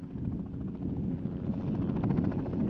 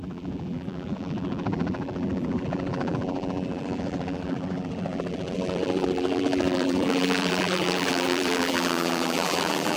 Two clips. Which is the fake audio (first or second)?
second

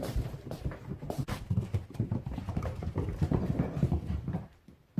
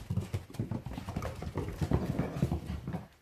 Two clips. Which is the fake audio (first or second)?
first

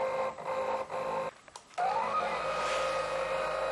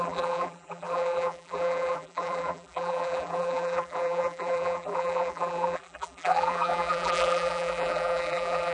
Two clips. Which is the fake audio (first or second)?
second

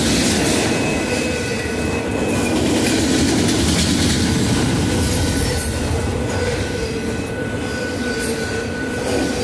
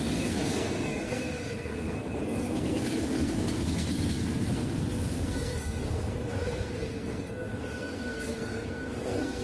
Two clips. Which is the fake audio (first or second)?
second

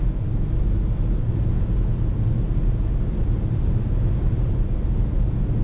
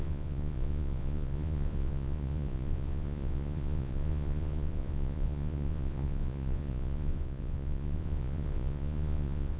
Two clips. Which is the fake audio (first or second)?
second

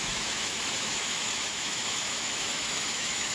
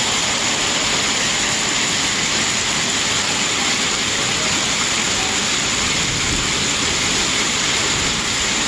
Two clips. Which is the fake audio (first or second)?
first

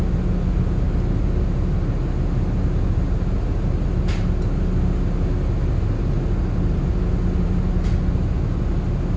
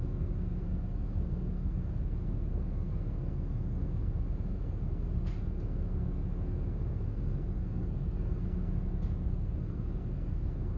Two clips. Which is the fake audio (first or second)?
second